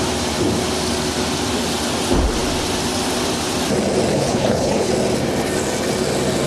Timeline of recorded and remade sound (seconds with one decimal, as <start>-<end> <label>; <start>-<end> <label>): 0.0-4.1 recorded; 4.1-4.9 remade; 4.9-6.5 recorded